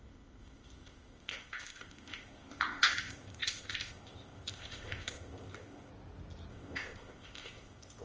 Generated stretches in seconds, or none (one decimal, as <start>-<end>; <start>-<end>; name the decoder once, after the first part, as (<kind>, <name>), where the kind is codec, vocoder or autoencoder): 0.0-5.9 (codec, ZipCodec); 6.5-8.0